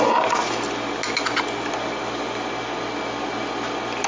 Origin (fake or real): real